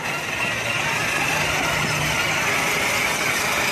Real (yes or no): yes